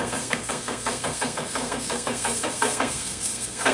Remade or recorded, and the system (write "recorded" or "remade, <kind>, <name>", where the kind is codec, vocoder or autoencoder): remade, codec, SNAC